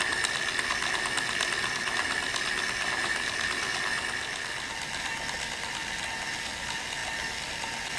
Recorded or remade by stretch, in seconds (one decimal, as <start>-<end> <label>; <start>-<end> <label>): 0.0-8.0 recorded

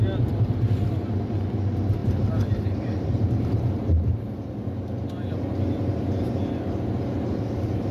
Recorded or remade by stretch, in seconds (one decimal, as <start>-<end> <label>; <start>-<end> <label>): 0.0-2.0 recorded; 2.0-4.1 remade; 4.1-7.9 recorded

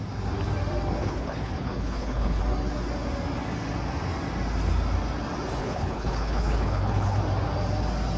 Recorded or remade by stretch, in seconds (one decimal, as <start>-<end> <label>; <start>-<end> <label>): 0.0-1.0 recorded; 1.0-2.4 remade; 2.4-5.6 recorded; 5.6-7.2 remade; 7.2-8.2 recorded

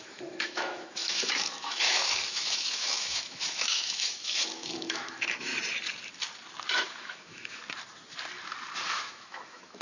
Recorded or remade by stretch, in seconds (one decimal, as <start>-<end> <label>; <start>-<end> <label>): 0.0-5.5 remade; 5.5-6.7 recorded; 6.7-7.6 remade; 7.6-8.8 recorded; 8.8-9.8 remade

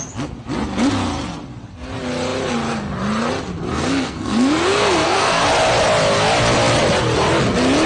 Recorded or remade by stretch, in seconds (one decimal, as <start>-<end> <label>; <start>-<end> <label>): 0.0-3.7 recorded; 3.7-5.4 remade; 5.4-7.9 recorded

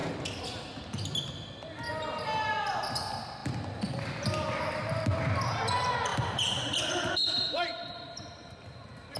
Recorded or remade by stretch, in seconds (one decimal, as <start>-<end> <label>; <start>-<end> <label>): 0.0-6.1 recorded; 6.1-9.2 remade

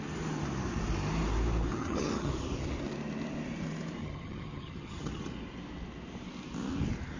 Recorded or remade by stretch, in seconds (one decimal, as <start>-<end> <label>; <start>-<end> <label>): 0.0-1.7 recorded; 1.7-2.3 remade; 2.3-4.0 recorded; 4.0-5.2 remade; 5.2-7.2 recorded